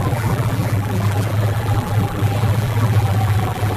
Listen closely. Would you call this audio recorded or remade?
remade